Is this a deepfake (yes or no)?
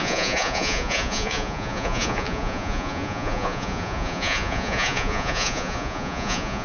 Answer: yes